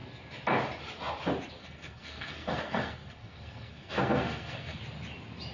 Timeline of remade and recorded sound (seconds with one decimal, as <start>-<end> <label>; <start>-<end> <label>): 0.0-1.6 recorded; 1.6-4.8 remade; 4.8-5.5 recorded

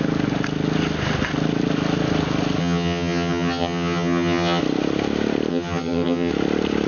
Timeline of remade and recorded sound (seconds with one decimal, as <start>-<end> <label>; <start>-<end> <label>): 0.0-2.6 recorded; 2.6-4.6 remade; 4.6-5.5 recorded; 5.5-6.3 remade; 6.3-6.9 recorded

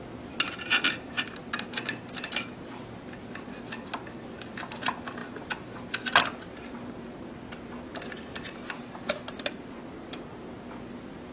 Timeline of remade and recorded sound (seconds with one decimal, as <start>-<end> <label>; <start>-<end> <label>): 0.0-11.3 recorded

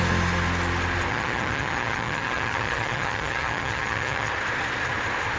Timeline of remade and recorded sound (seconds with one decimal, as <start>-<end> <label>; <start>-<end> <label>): 0.0-1.1 recorded; 1.1-4.3 remade; 4.3-5.4 recorded